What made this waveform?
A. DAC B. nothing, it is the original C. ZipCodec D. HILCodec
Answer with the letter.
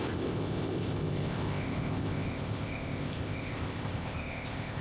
C